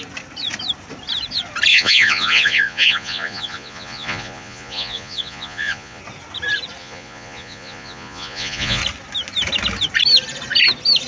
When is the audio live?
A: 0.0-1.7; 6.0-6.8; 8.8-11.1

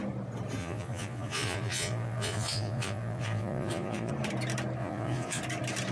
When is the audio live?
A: 0.0-0.6; 4.1-4.8; 5.4-5.9

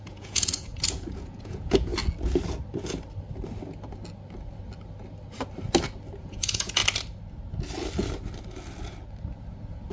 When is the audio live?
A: 1.9-6.2; 6.8-9.9

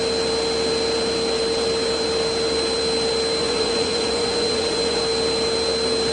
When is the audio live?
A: 0.0-3.4; 5.0-6.1